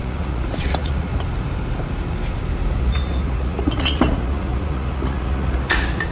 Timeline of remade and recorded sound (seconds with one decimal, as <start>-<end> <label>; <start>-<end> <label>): 0.0-1.1 remade; 1.1-2.7 recorded; 2.7-6.1 remade